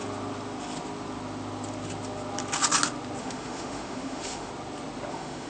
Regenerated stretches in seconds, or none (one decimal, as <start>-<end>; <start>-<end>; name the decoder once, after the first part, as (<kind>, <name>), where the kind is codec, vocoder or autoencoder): 3.2-4.5 (autoencoder, DAC-VAE); 5.1-5.5